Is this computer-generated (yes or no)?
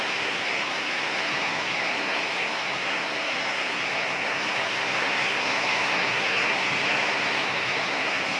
yes